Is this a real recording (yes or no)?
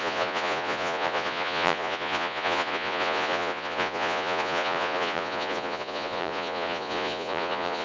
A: no